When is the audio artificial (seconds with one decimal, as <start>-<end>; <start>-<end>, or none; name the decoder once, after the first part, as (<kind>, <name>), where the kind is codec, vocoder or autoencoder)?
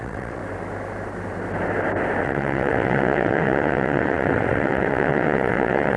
0.0-0.4 (vocoder, WaveNeXt); 2.2-6.0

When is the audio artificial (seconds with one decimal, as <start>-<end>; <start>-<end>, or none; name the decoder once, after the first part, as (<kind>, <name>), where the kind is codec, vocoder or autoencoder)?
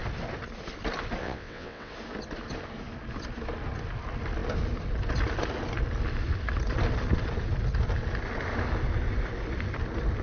1.2-1.9 (vocoder, WaveNeXt)